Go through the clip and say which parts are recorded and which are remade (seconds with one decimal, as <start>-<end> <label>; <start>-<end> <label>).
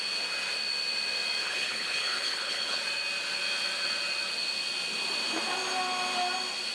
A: 0.0-1.4 recorded; 1.4-2.8 remade; 2.8-6.7 recorded